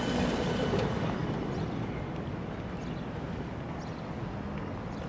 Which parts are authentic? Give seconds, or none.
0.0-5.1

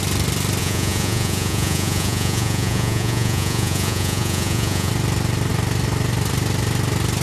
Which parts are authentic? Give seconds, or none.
0.0-0.6; 4.9-7.2

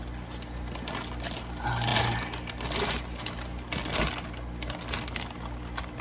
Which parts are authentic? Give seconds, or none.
0.0-6.0

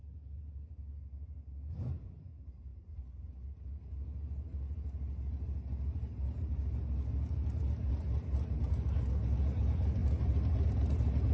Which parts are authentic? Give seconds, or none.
0.0-11.3

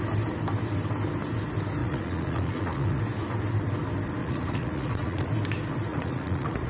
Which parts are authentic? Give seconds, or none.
0.0-1.8; 3.0-4.2; 5.3-5.9